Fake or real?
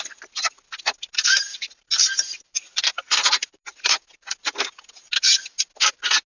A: real